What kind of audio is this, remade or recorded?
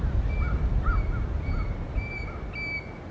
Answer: recorded